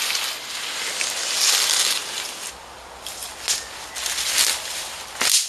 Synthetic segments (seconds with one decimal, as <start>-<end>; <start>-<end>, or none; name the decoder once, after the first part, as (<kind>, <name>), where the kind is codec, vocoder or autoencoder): none

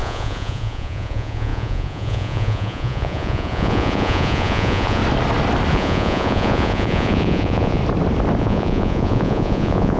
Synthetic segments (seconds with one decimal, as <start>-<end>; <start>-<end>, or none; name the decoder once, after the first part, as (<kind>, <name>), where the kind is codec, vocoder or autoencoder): 0.0-5.0 (vocoder, Vocos); 5.7-7.8; 8.4-10.0

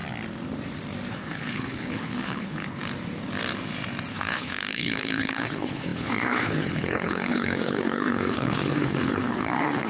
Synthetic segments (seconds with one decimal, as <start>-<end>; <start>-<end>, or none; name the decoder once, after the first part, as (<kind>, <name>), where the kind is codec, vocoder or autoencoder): 1.1-2.8 (codec, HILCodec); 4.1-9.9